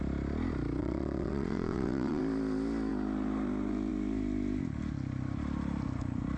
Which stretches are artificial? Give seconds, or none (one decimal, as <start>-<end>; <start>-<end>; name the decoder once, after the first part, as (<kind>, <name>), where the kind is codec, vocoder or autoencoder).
0.8-2.2 (vocoder, WaveNeXt)